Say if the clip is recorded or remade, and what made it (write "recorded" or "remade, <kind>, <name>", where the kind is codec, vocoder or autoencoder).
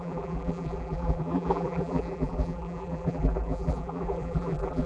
remade, vocoder, BigVGAN v2